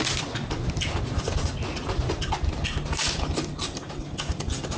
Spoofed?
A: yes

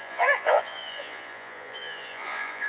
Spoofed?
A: yes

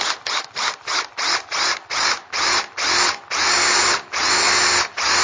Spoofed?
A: no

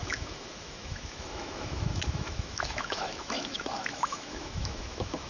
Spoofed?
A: yes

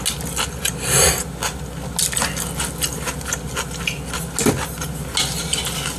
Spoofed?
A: no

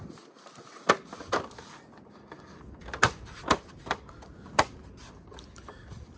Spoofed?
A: yes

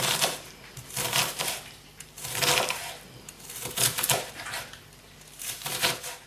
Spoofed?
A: yes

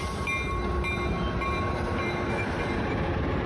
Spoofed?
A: no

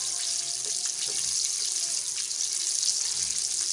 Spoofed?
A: no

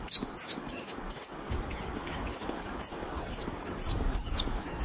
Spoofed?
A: yes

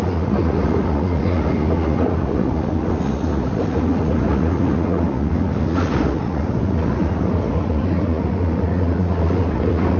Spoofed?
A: yes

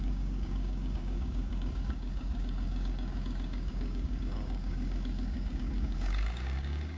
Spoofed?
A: yes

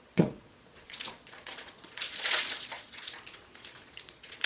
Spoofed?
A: yes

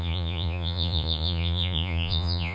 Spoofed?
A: yes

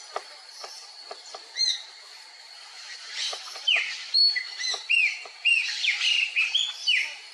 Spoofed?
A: yes